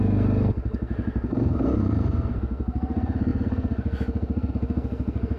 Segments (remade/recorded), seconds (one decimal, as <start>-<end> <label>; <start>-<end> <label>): 0.0-5.4 remade